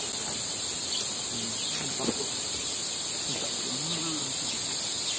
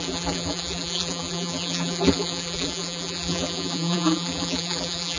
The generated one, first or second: second